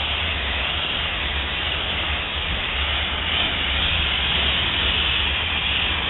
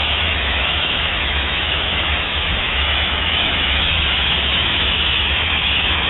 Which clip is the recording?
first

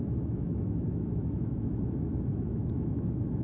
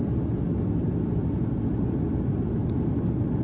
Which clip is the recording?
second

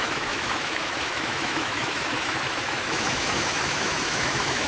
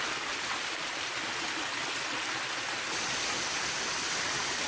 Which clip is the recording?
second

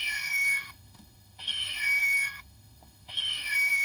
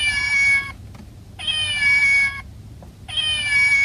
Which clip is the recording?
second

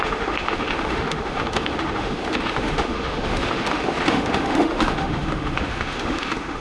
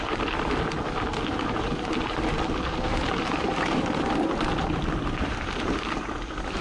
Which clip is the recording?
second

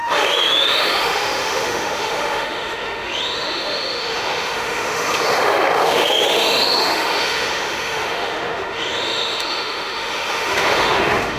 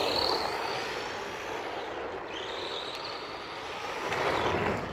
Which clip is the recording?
second